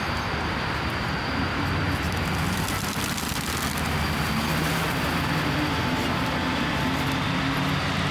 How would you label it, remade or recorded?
recorded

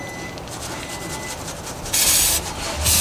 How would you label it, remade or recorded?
recorded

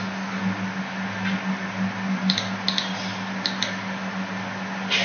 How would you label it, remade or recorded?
recorded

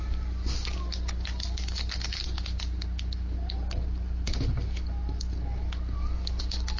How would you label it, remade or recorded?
recorded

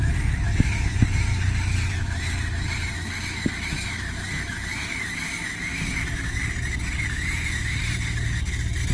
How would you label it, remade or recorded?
remade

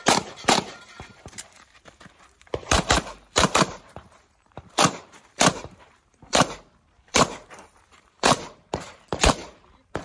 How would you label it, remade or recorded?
remade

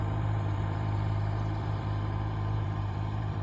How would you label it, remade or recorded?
remade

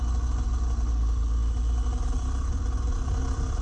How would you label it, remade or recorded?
recorded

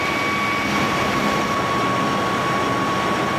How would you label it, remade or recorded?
recorded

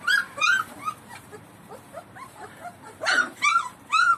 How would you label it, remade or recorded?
remade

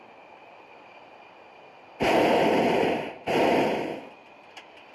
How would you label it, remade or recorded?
recorded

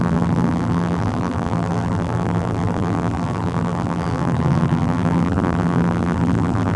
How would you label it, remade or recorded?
remade